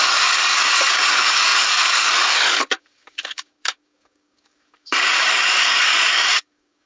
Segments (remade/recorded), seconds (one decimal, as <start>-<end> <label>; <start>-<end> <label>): 0.0-6.9 remade